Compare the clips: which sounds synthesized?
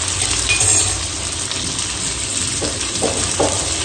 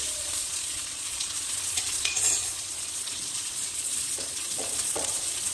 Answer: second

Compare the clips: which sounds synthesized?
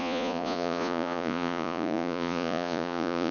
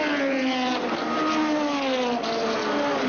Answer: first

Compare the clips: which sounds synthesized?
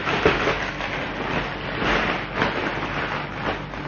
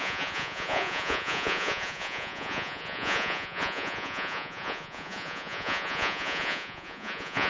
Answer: second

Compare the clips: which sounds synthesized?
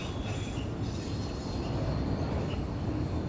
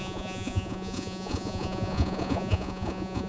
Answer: second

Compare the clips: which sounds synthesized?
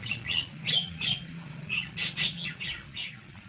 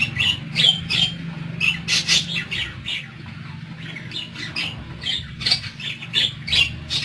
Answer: first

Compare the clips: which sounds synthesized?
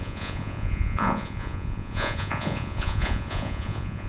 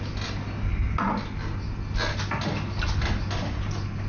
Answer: first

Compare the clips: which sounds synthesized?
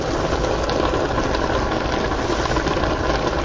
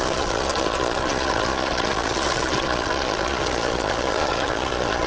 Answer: second